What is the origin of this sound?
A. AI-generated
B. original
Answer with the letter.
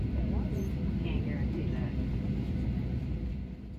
B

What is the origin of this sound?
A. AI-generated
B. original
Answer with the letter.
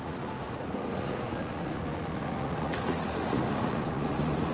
A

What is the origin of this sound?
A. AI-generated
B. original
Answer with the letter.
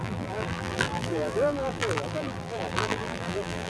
A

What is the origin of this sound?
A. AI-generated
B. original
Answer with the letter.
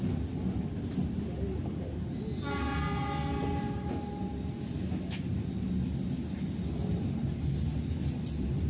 B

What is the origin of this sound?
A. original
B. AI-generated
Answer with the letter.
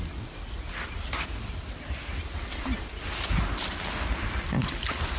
A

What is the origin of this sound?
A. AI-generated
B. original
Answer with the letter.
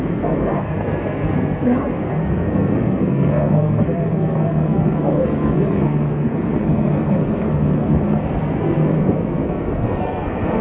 A